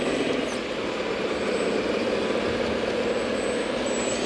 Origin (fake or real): real